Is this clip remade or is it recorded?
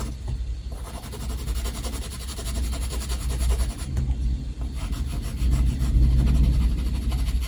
recorded